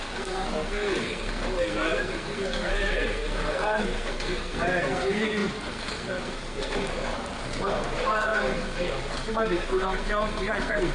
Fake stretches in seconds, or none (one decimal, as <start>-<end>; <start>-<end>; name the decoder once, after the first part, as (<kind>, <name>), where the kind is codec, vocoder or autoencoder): 0.0-10.9 (codec, SNAC)